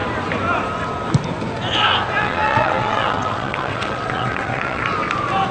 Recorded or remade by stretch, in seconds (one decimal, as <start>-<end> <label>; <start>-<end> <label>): 0.0-2.2 recorded; 2.2-4.8 remade; 4.8-5.5 recorded